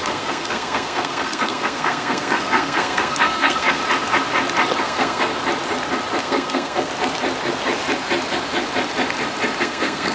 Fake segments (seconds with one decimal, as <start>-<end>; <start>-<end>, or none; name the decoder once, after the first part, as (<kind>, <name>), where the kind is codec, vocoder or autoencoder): 0.0-3.8 (codec, SNAC); 4.8-5.3; 6.2-6.9; 9.6-10.1